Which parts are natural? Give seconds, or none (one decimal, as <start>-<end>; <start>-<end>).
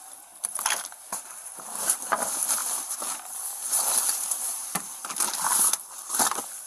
none